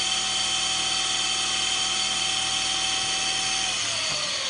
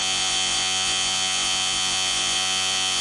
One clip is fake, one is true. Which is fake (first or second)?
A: second